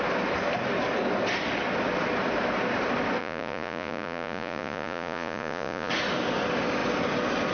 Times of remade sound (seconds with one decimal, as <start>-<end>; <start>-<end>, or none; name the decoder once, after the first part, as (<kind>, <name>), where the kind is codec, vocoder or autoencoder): 3.2-5.9 (vocoder, Vocos)